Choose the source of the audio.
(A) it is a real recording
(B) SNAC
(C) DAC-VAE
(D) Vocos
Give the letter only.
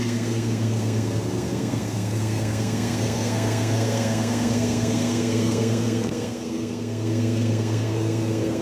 B